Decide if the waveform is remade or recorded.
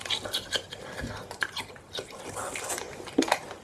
recorded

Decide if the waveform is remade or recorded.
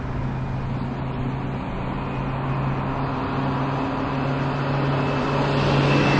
recorded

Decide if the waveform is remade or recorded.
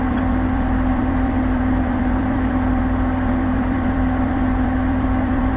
remade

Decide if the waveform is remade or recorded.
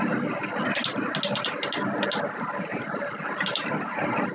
recorded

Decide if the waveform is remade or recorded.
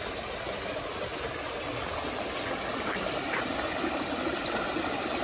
recorded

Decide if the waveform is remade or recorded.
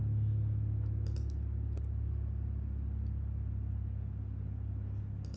recorded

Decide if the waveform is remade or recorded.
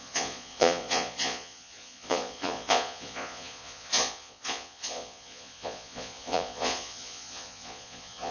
remade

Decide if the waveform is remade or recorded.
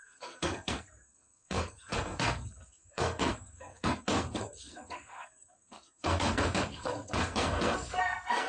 remade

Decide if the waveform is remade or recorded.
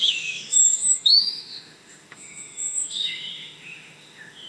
remade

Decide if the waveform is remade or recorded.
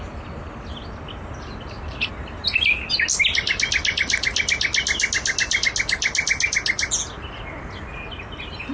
recorded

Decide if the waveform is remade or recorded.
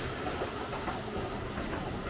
recorded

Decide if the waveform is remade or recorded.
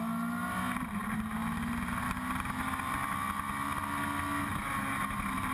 recorded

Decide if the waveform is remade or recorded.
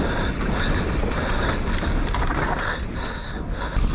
recorded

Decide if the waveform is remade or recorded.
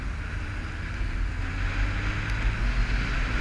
recorded